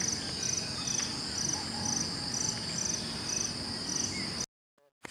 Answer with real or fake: real